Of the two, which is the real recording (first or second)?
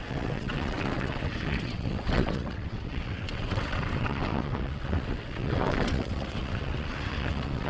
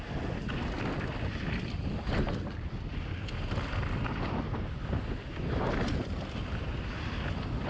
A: second